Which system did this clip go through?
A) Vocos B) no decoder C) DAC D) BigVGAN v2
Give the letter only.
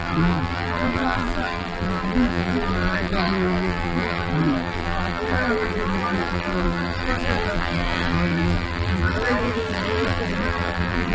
D